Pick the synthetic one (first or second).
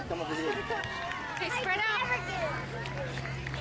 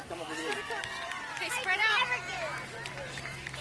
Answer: second